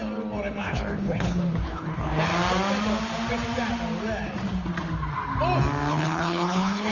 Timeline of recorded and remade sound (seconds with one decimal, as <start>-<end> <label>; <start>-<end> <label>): 0.0-0.6 recorded; 0.6-2.3 remade; 2.3-5.9 recorded; 5.9-6.9 remade